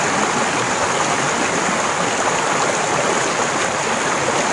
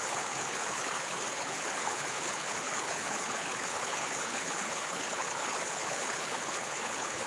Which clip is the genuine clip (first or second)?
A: first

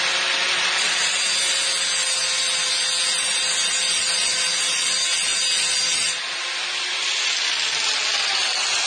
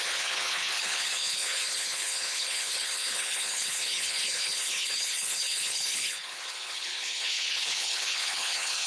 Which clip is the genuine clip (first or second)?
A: first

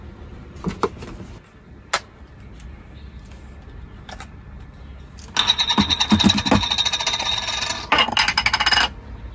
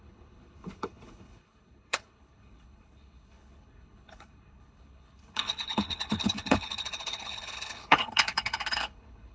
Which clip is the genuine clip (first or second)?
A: first